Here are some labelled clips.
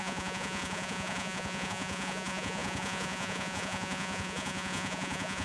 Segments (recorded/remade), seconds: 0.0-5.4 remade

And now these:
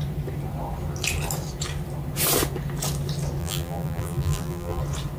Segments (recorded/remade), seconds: 0.0-3.4 recorded; 3.4-4.8 remade; 4.8-5.2 recorded

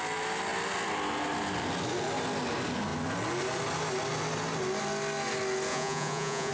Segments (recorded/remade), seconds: 0.0-5.7 recorded; 5.7-6.5 remade

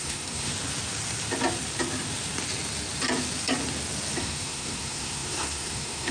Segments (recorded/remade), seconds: 0.0-0.5 remade; 0.5-4.2 recorded; 4.2-6.1 remade

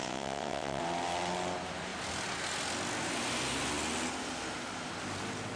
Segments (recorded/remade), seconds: 0.0-0.8 remade; 0.8-5.6 recorded

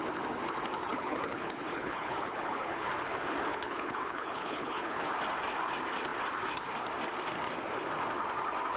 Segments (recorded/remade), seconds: 0.0-0.9 recorded; 0.9-2.9 remade; 2.9-3.5 recorded; 3.5-5.0 remade; 5.0-8.8 recorded

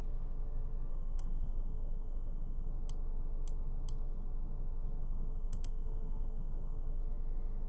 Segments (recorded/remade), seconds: 0.0-0.9 recorded; 0.9-2.7 remade; 2.7-5.0 recorded; 5.0-7.0 remade; 7.0-7.7 recorded